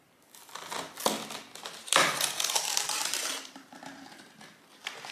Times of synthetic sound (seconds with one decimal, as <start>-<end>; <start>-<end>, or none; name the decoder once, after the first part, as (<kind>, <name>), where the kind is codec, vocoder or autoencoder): 1.8-4.3 (vocoder, BigVGAN v2)